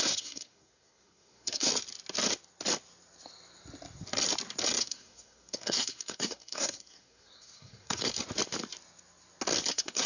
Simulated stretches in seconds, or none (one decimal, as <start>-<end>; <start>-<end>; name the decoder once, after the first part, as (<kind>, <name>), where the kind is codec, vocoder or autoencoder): 0.0-1.7 (codec, SNAC); 4.8-8.1; 9.7-10.1